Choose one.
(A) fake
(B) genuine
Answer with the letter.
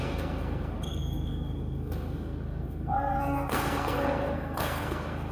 A